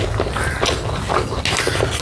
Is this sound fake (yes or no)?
no